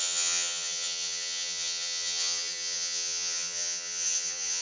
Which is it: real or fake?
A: fake